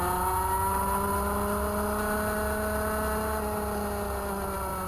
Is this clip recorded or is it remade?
recorded